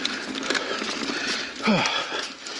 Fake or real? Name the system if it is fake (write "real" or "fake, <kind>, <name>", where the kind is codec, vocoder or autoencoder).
real